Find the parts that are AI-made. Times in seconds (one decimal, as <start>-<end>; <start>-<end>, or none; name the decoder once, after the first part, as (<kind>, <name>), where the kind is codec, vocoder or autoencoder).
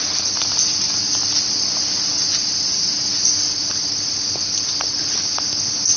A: 0.0-1.0 (vocoder, BigVGAN v2); 2.4-3.2; 3.8-4.6